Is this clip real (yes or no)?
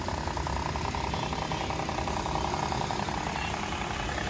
yes